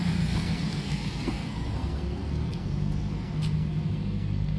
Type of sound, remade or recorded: remade